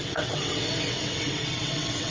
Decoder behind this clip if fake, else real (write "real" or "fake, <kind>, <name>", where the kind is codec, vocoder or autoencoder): fake, vocoder, WaveNeXt